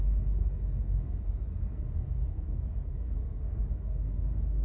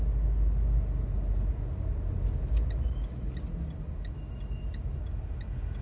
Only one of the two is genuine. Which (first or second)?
second